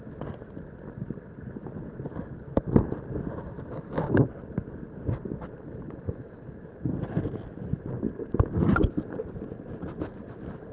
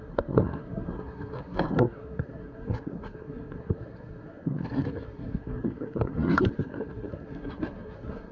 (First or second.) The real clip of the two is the first